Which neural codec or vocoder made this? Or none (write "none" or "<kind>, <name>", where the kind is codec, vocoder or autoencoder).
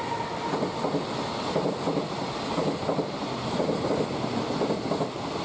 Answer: none